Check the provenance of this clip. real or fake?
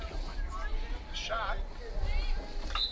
real